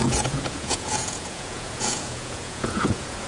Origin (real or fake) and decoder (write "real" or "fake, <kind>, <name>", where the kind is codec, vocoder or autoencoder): fake, vocoder, Vocos